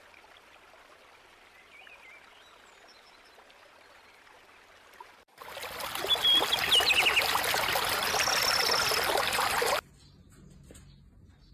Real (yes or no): yes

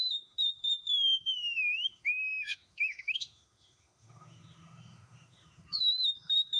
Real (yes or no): no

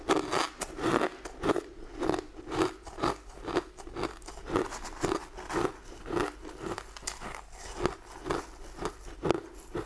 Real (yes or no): yes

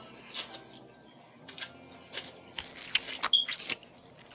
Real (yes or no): yes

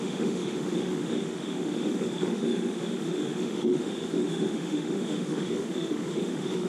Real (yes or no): no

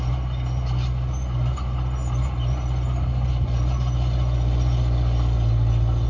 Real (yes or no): yes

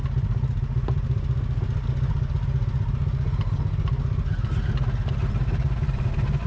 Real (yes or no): yes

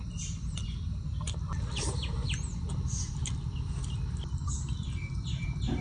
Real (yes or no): yes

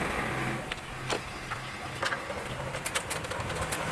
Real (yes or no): yes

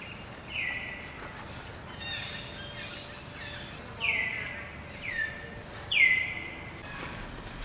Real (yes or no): yes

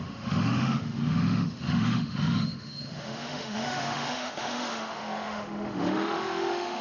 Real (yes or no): no